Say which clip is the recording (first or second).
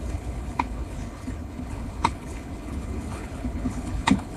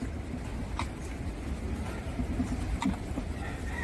second